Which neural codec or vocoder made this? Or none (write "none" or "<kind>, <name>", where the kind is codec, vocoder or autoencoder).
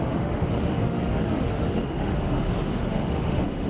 autoencoder, DAC-VAE